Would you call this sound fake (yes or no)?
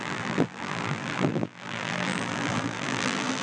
yes